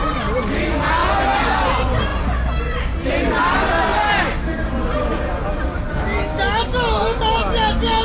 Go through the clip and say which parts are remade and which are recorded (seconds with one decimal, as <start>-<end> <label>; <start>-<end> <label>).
0.0-8.0 recorded